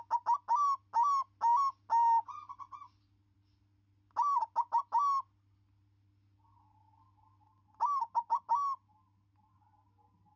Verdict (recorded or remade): recorded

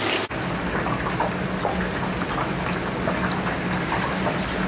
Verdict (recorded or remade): recorded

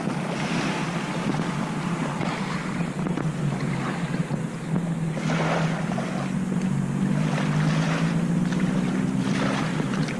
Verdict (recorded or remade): recorded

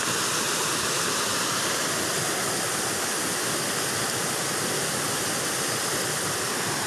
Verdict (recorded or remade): recorded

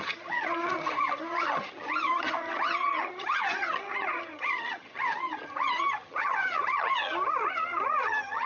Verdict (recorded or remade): remade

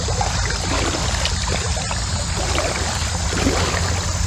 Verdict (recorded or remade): recorded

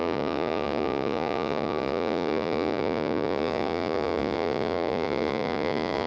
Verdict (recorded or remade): remade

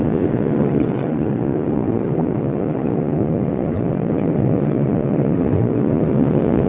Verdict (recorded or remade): remade